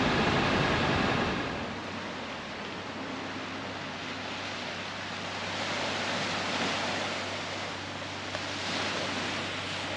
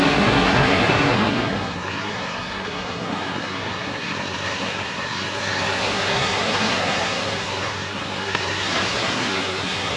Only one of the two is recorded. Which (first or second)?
first